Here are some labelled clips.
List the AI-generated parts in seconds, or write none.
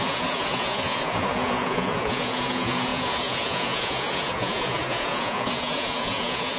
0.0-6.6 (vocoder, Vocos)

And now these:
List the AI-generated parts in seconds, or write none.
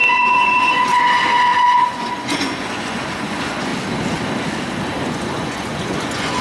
0.0-3.7 (vocoder, Vocos); 5.1-6.4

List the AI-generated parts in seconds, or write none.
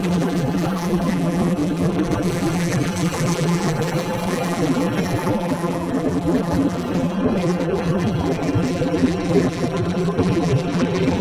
0.0-11.2 (vocoder, BigVGAN v2)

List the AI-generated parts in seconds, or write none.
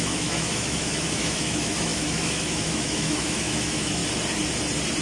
0.0-4.0 (autoencoder, DAC-VAE)